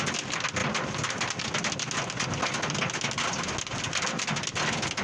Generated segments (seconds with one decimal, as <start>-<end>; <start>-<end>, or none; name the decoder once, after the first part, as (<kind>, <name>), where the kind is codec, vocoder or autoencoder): none